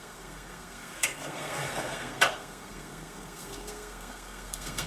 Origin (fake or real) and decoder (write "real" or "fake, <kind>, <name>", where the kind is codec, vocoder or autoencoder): fake, codec, SNAC